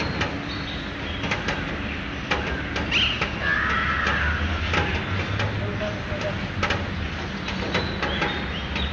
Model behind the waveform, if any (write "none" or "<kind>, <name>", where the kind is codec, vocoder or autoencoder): none